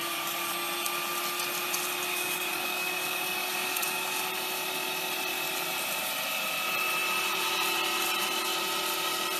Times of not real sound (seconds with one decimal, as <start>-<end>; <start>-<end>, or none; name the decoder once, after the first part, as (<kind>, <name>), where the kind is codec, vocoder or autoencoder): 0.0-0.5 (codec, DAC); 2.1-4.2